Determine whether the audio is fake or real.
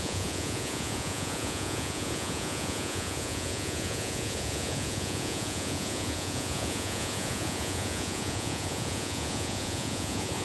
fake